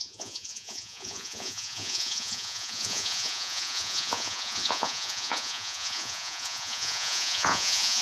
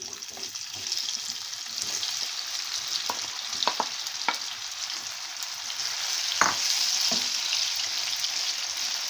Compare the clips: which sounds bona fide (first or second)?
second